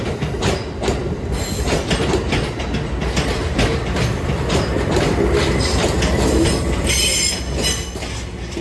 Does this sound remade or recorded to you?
recorded